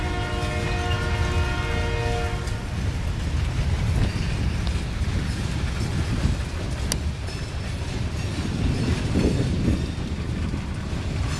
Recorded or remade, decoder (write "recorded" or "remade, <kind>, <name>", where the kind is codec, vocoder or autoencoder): recorded